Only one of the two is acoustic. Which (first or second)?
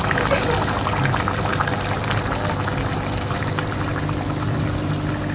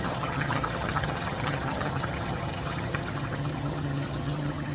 first